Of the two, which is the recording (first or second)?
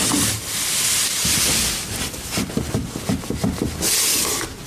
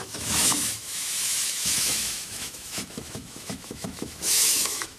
first